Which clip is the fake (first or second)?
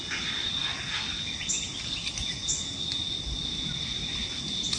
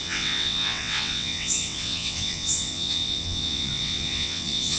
second